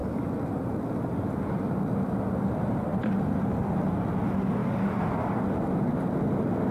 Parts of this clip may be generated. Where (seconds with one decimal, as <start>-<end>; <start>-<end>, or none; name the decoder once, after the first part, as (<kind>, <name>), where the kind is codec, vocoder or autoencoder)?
none